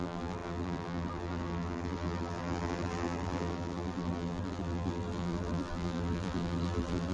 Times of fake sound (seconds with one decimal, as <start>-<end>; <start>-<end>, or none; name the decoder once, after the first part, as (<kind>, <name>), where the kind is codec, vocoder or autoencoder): 0.0-7.1 (vocoder, BigVGAN v2)